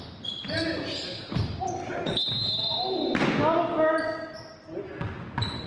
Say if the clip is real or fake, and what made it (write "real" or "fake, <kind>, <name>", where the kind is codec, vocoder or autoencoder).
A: real